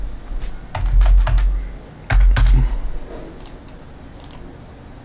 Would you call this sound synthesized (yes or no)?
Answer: no